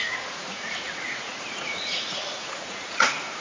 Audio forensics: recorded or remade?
remade